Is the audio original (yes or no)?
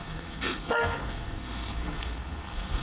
no